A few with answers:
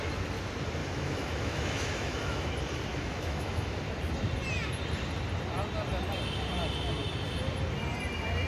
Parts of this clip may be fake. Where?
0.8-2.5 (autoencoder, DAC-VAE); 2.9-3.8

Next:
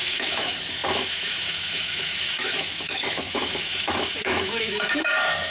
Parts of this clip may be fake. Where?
0.0-5.5 (autoencoder, DAC-VAE)

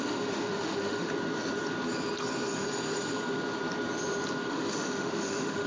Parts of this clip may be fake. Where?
0.0-1.1 (autoencoder, DAC-VAE); 4.5-5.7

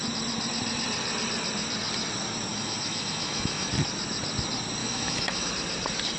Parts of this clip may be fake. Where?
2.5-3.7 (autoencoder, DAC-VAE); 4.8-5.5

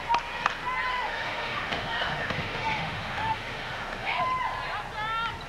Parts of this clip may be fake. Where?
0.9-4.2 (autoencoder, DAC-VAE)

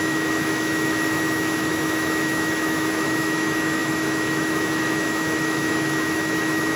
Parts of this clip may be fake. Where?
0.0-6.8 (autoencoder, DAC-VAE)

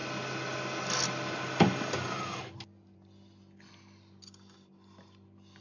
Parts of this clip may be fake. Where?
none

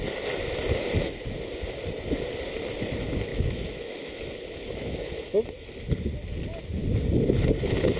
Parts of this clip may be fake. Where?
3.3-5.8 (autoencoder, DAC-VAE)